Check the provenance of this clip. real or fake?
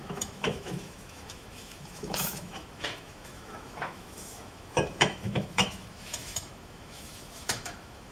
fake